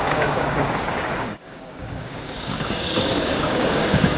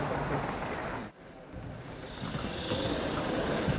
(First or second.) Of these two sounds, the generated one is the first